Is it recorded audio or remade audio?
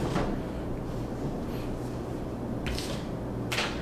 recorded